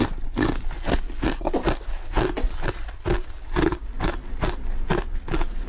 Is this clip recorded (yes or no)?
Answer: yes